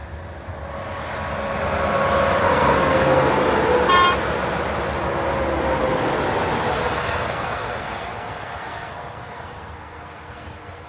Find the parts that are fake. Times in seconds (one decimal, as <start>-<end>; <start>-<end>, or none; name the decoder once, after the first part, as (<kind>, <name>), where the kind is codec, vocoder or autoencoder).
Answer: 2.4-3.3 (codec, SNAC); 6.8-10.9